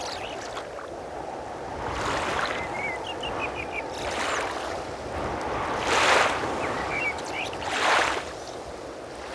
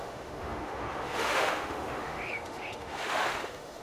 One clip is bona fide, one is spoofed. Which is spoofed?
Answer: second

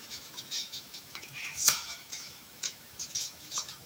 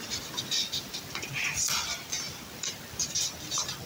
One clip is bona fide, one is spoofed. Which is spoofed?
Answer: first